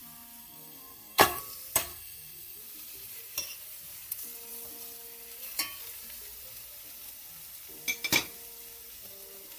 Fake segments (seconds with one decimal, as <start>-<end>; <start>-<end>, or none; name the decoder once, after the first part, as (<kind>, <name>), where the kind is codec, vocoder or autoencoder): 0.4-1.4 (codec, SNAC); 1.9-2.6